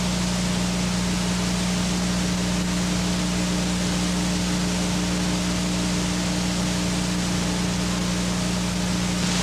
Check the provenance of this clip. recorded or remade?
recorded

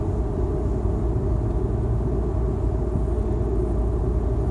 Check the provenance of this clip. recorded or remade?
recorded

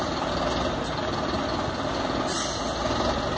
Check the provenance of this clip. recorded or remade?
recorded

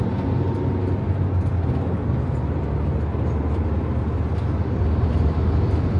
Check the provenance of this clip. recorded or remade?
recorded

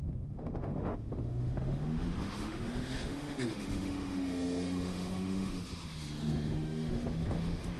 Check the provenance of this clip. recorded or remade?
remade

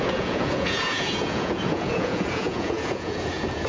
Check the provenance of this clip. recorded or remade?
remade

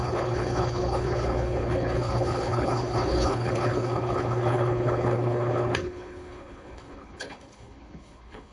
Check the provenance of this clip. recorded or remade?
remade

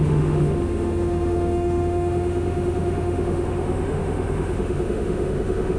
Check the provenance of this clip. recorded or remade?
remade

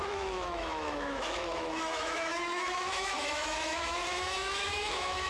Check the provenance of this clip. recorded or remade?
remade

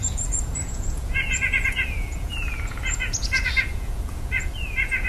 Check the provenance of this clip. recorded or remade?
remade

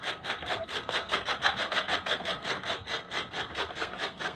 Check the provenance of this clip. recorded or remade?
remade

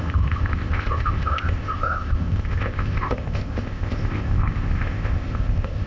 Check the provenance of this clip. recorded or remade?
remade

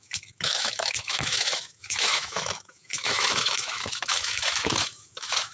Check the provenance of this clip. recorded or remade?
remade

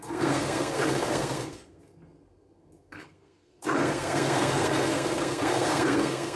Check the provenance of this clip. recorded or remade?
remade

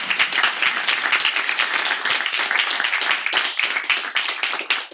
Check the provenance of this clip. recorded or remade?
recorded